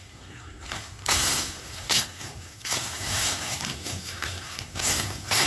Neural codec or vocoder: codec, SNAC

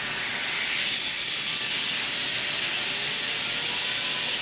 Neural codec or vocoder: none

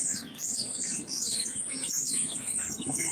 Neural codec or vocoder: codec, SNAC